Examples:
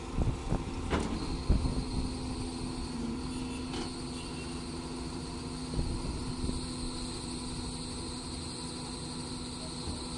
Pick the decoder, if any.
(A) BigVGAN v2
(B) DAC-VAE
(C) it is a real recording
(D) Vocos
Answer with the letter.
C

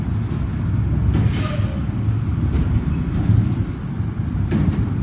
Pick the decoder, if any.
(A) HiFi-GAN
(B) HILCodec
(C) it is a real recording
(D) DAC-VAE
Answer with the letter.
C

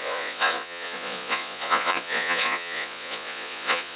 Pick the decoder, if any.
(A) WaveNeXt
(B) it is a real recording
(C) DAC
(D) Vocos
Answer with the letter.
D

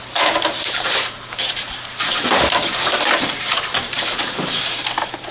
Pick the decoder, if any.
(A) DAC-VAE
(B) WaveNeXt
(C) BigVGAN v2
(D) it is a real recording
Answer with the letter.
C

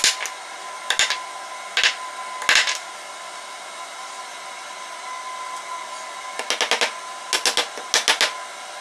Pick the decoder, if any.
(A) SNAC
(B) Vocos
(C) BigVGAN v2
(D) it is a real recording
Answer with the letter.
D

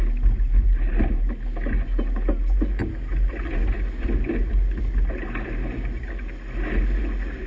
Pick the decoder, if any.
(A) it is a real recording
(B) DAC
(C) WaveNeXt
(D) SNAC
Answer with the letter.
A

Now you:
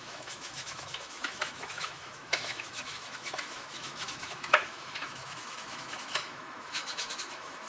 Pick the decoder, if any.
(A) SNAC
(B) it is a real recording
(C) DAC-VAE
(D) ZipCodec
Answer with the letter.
C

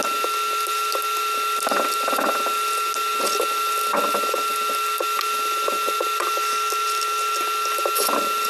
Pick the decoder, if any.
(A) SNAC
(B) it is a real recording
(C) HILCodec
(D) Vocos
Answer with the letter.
B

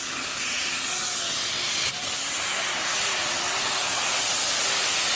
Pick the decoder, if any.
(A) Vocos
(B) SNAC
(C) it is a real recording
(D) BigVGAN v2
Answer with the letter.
C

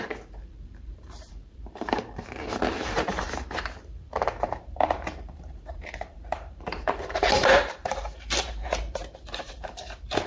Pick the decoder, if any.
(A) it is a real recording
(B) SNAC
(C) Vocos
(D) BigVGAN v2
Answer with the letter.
D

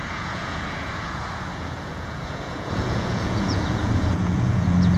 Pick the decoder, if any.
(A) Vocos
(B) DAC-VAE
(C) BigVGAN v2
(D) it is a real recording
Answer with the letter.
A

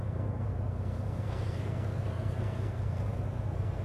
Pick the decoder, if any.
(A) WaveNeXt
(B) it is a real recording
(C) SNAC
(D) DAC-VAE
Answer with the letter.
C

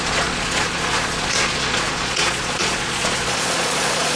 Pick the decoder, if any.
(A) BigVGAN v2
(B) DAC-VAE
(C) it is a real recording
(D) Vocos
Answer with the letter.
D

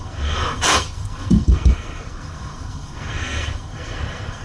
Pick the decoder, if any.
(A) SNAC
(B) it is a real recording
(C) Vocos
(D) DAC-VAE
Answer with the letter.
A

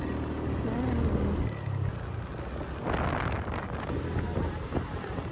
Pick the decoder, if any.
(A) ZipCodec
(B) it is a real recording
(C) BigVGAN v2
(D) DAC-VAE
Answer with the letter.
B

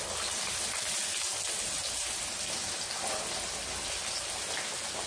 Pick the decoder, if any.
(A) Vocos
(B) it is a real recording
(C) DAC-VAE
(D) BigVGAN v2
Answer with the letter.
B